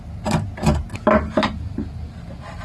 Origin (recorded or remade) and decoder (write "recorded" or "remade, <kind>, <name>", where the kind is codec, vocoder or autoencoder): recorded